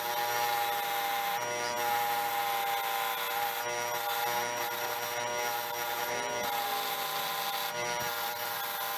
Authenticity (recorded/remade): recorded